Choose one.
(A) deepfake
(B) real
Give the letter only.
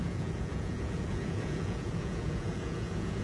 A